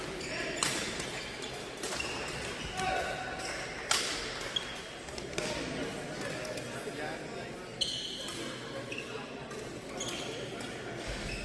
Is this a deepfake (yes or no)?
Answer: no